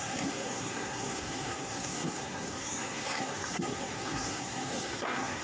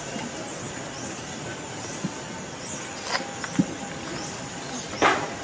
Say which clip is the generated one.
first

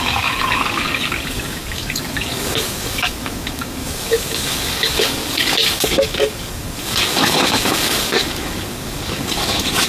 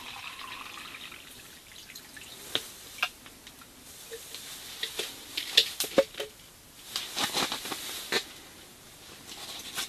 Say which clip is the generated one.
first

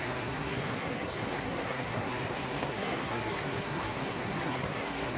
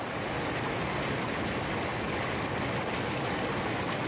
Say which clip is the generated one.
first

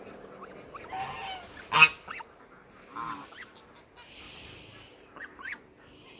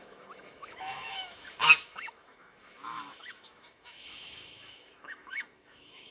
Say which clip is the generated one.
second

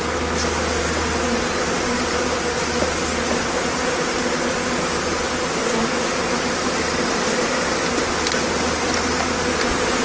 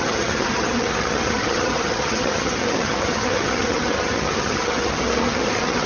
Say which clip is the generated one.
second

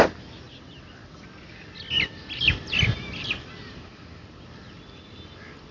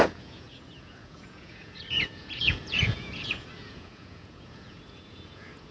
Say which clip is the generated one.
second